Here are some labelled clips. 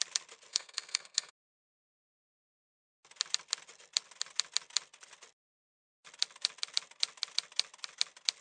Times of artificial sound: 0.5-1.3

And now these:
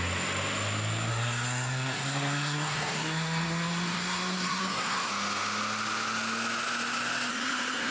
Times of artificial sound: 1.1-5.1; 7.3-7.9

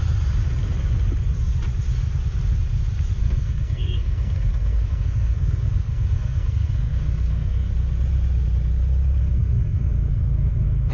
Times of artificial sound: 3.2-7.7; 9.2-10.9

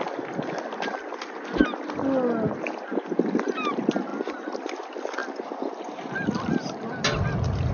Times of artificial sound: none

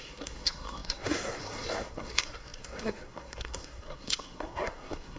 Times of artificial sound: 0.0-5.2